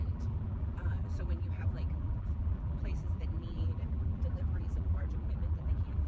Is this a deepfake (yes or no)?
yes